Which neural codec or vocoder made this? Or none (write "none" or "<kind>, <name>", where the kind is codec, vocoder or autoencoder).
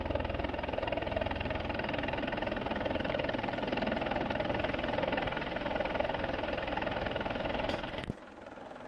none